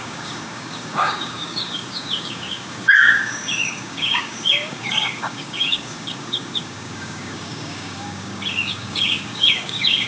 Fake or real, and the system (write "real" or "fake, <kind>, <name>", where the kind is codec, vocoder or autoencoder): fake, codec, DAC